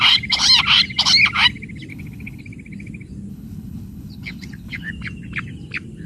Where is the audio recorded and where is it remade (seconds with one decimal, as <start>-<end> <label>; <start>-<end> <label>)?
0.0-1.9 recorded; 1.9-2.4 remade; 2.4-3.3 recorded; 3.3-4.9 remade; 4.9-6.1 recorded